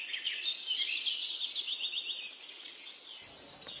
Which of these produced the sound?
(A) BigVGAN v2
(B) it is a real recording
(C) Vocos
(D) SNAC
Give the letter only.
B